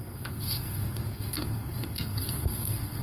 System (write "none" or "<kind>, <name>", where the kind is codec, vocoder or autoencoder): codec, SNAC